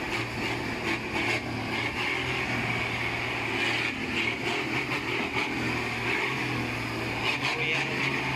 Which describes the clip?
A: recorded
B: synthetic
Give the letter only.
A